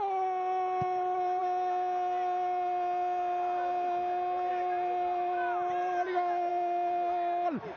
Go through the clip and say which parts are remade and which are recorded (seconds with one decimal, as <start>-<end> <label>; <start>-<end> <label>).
0.0-7.8 recorded